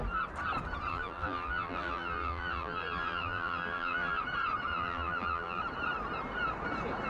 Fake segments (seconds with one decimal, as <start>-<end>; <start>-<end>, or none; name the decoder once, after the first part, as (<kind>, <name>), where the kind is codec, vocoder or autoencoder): 0.9-4.2 (vocoder, BigVGAN v2); 4.7-5.6